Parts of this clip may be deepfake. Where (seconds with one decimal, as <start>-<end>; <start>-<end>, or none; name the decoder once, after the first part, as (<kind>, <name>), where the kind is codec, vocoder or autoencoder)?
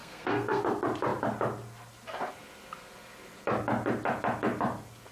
0.0-0.6 (codec, SNAC)